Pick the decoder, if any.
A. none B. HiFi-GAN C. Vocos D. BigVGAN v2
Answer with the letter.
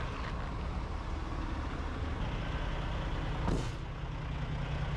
A